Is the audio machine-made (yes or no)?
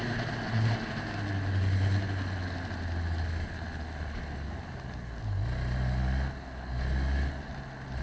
no